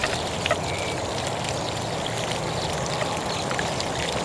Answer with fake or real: real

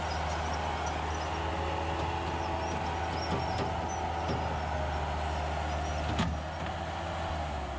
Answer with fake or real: real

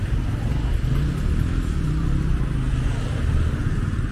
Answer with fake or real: real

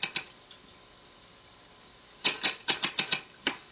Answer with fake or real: real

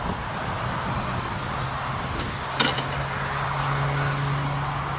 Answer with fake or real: real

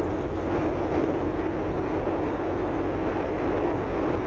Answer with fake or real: real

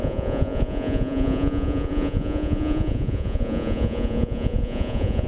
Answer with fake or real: fake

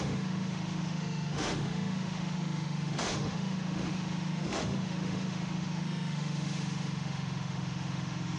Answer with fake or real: fake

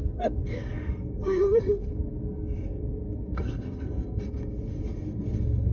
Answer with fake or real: fake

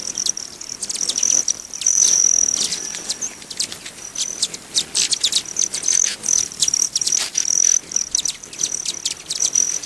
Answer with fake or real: fake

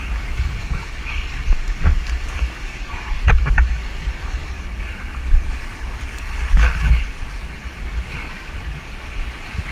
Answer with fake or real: fake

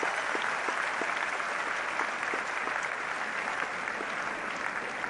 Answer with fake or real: real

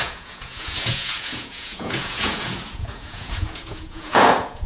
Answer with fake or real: fake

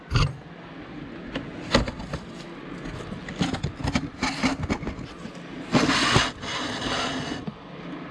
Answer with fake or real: real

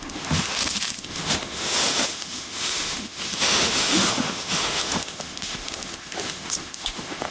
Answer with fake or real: fake